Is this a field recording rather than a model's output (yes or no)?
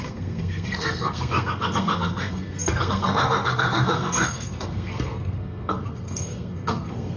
no